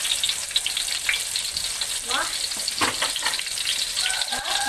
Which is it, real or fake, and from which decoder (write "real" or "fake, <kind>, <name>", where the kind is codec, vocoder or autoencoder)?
fake, vocoder, BigVGAN v2